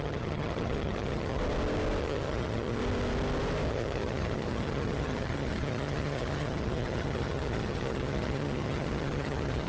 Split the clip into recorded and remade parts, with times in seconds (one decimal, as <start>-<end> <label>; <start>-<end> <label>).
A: 0.0-1.4 remade; 1.4-2.0 recorded; 2.0-2.8 remade; 2.8-3.7 recorded; 3.7-9.7 remade